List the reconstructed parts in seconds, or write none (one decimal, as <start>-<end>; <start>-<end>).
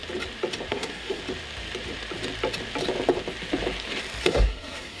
0.7-1.2; 4.2-5.0